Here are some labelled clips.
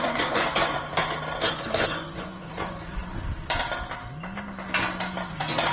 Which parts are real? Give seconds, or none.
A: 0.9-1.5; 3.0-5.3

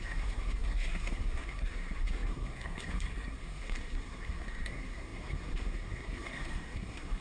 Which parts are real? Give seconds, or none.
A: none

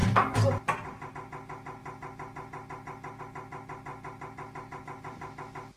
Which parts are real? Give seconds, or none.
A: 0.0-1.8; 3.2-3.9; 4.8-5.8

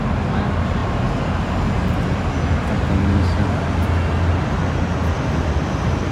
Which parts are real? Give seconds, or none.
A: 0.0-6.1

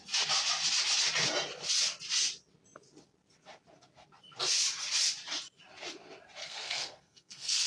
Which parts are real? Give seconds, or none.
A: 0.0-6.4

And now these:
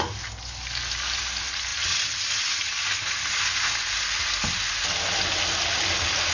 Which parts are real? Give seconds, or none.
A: 0.0-6.3

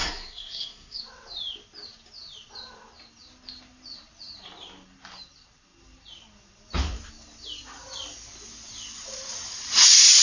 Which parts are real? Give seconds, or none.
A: 1.0-10.2

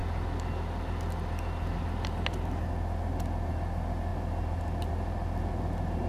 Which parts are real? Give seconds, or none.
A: 0.0-6.1